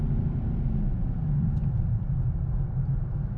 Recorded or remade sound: recorded